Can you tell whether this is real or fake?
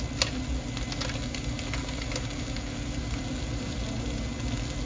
real